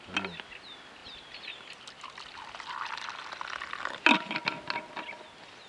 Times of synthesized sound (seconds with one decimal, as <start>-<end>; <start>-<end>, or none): none